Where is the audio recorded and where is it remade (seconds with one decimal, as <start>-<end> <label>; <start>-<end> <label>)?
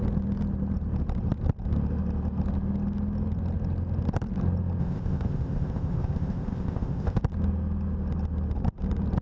0.0-4.8 recorded; 4.8-7.2 remade; 7.2-9.2 recorded